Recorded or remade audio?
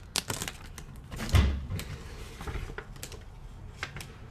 recorded